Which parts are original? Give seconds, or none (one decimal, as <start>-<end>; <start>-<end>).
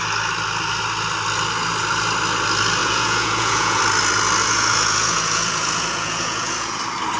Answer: 0.0-2.8; 3.8-4.4; 6.8-7.2